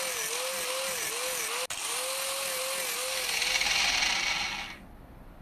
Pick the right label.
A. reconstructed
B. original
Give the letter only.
B